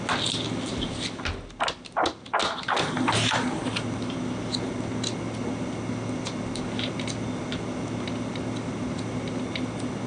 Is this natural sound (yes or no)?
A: yes